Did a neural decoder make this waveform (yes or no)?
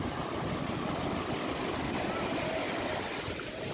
no